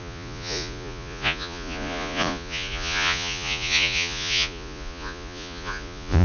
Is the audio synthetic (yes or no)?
yes